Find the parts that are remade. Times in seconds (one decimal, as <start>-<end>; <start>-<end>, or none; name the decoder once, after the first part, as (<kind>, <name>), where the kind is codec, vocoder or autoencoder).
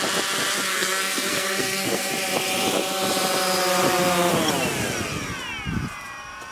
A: 0.7-2.1 (codec, SNAC)